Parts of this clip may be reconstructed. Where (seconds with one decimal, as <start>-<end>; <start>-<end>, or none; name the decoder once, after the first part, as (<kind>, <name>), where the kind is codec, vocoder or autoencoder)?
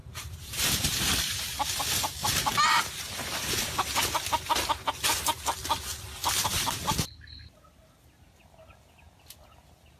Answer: 0.0-1.4 (vocoder, BigVGAN v2); 2.2-2.8